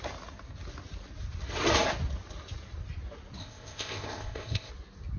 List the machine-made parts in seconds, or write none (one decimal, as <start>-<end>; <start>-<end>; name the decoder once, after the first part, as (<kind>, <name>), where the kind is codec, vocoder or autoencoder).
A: 3.4-4.7 (codec, ZipCodec)